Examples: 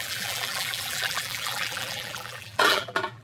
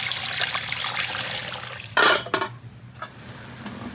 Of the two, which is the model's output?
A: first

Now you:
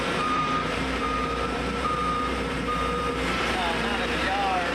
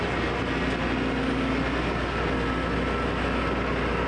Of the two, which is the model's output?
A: first